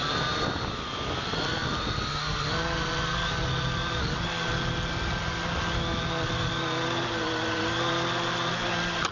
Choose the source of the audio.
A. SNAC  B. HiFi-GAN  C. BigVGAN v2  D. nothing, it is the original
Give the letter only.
D